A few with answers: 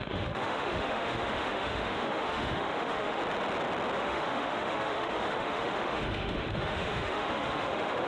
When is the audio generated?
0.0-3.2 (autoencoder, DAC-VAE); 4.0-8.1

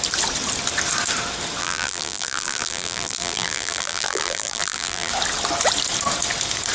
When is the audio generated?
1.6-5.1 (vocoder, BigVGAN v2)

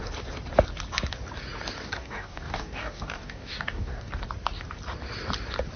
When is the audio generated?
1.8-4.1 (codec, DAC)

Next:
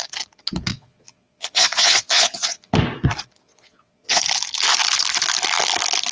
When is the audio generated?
0.7-2.7 (vocoder, Vocos); 3.4-4.2

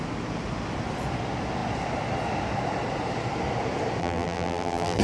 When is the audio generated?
4.0-5.0 (vocoder, BigVGAN v2)

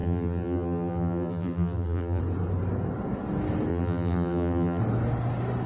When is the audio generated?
0.0-2.2 (vocoder, BigVGAN v2); 3.7-4.8

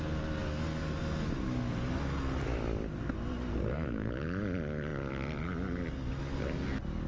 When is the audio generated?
3.5-4.1 (codec, SNAC)